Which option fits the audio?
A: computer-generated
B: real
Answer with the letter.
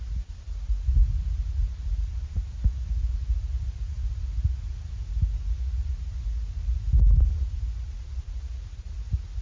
B